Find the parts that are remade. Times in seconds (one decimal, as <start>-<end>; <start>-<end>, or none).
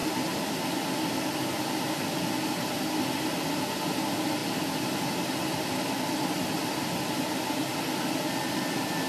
none